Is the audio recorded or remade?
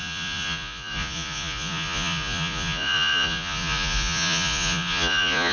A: remade